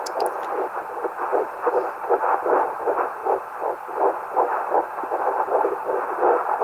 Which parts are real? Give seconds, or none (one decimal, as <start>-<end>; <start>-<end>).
0.0-6.6